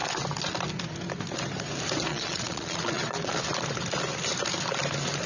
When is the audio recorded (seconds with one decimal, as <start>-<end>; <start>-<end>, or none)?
0.0-2.1; 3.4-5.3